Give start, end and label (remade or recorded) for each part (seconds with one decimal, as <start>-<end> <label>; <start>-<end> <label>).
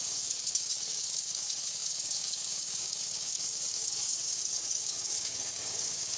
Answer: 0.0-6.2 remade